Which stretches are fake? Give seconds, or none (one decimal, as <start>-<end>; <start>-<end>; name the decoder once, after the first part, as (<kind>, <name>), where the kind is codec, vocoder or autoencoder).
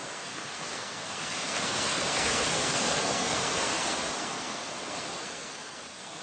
0.0-6.2 (codec, SNAC)